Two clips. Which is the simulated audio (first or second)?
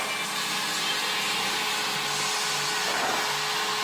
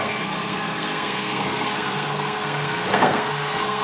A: second